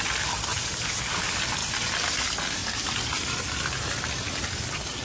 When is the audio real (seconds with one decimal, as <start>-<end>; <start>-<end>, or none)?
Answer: 0.0-0.5; 1.0-5.0